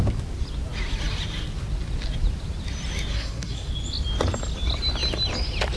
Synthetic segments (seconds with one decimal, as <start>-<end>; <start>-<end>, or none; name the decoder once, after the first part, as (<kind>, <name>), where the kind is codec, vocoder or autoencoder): 3.1-3.7 (codec, SNAC)